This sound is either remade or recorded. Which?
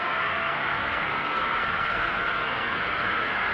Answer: remade